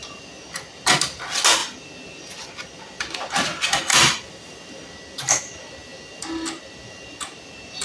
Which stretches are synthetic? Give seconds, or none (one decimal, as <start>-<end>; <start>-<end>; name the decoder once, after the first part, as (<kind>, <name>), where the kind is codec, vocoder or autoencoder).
none